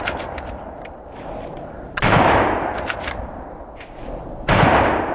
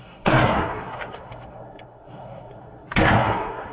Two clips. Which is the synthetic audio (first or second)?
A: second